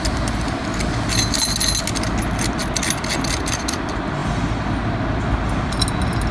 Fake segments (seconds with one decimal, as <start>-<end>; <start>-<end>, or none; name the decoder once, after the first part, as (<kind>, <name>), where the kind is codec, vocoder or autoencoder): none